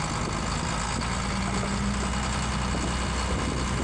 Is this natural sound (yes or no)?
yes